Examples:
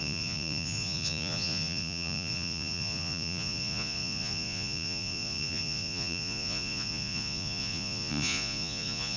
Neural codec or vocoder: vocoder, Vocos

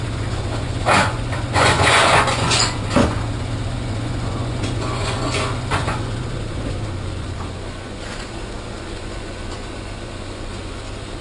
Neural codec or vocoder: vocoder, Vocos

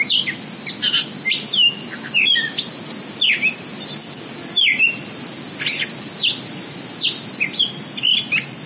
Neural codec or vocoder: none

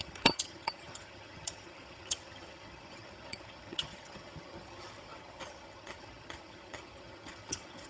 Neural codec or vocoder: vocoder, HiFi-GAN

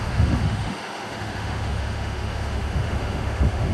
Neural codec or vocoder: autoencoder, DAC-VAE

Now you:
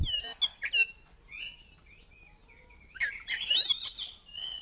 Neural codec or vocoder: none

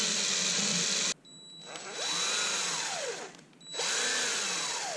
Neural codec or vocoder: none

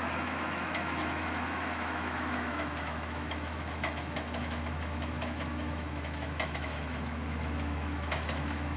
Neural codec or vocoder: autoencoder, DAC-VAE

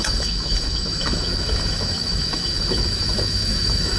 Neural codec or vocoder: autoencoder, DAC-VAE